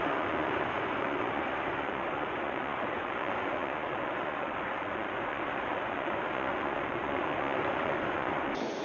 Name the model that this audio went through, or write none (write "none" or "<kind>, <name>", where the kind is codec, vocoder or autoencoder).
vocoder, Vocos